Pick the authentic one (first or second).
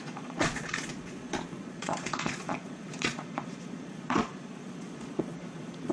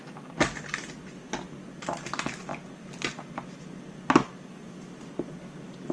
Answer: second